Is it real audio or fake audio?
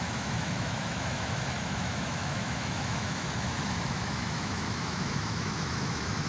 fake